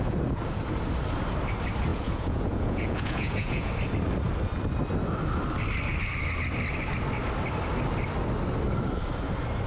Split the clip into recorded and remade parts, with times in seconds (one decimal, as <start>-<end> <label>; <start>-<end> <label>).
0.0-1.9 recorded; 1.9-3.7 remade; 3.7-9.7 recorded